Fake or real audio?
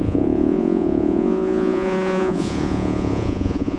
fake